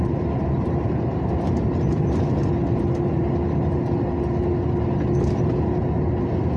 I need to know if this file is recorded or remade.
recorded